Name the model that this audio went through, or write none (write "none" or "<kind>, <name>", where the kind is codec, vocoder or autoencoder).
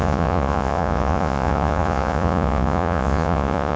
vocoder, Vocos